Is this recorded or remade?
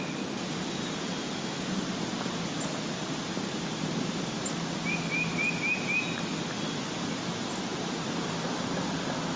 recorded